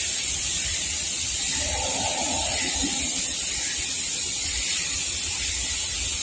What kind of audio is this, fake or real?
real